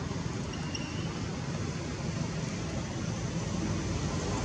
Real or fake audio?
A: real